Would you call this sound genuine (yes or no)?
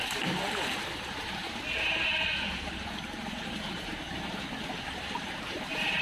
no